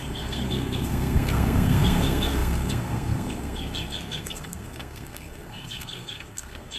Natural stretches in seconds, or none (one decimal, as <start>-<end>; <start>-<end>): none